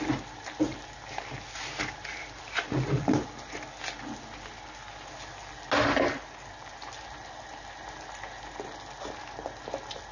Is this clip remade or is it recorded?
recorded